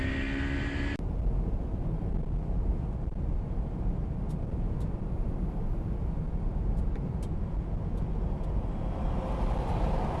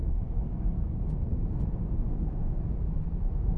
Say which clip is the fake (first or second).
second